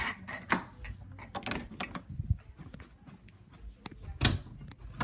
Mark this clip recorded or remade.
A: recorded